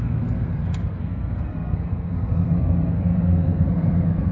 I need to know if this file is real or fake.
fake